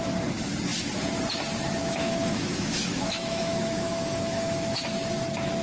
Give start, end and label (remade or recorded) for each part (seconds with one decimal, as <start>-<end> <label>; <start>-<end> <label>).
0.0-1.8 recorded; 1.8-4.8 remade; 4.8-5.6 recorded